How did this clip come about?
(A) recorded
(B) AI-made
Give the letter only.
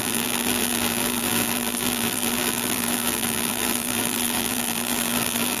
B